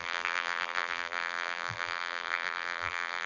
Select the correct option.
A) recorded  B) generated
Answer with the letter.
B